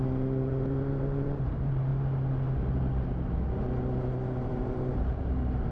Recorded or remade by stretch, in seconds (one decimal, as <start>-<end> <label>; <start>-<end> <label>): 0.0-1.9 remade; 1.9-4.4 recorded; 4.4-5.7 remade